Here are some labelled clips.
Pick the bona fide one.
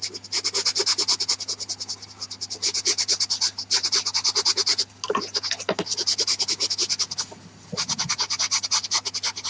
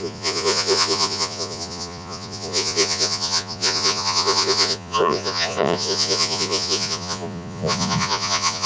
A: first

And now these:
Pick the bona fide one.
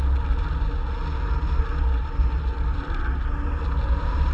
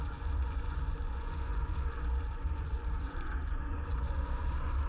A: first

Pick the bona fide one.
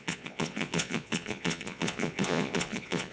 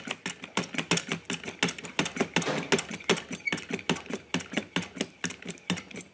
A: second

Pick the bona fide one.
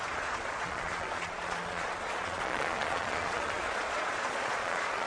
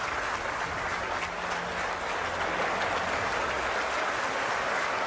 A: second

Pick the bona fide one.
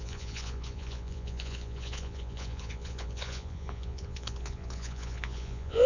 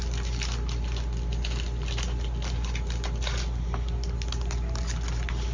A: second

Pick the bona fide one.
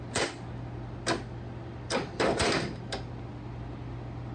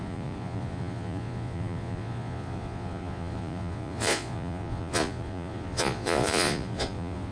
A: first